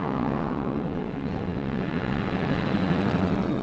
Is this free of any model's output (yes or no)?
no